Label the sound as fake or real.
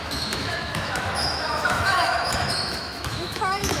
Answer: fake